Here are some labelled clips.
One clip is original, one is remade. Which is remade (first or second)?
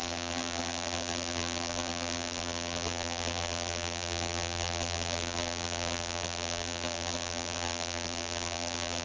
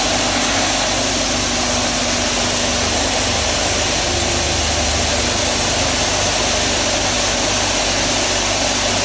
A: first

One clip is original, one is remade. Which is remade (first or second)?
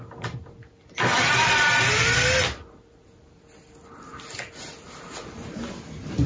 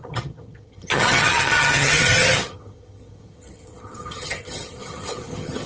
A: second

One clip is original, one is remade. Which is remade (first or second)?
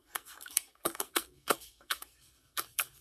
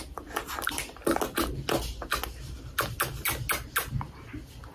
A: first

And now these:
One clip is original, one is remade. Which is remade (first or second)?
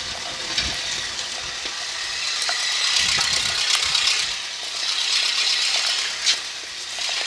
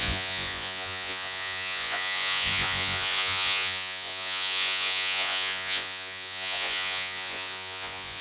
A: second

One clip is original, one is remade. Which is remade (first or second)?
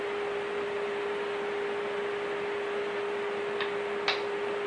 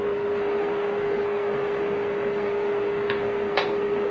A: second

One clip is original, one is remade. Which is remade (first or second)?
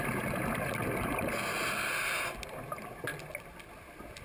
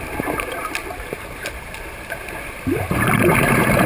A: second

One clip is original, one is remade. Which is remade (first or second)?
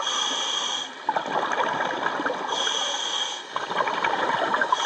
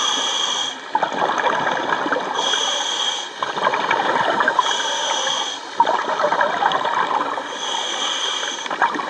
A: second